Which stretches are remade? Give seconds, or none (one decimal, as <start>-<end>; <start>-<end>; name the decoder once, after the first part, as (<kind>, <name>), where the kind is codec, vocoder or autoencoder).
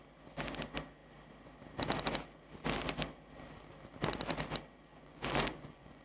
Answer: 4.9-6.0 (vocoder, Vocos)